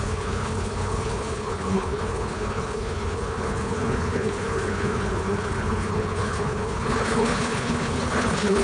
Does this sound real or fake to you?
fake